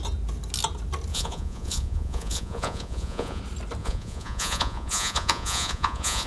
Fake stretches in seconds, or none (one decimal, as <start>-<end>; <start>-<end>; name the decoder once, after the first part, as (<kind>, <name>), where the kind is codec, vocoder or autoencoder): 1.1-3.4 (vocoder, Vocos); 3.8-6.3